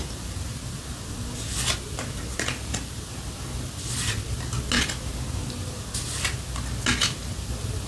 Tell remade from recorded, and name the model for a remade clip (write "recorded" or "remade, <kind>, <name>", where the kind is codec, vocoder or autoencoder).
recorded